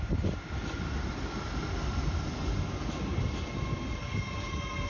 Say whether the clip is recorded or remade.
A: recorded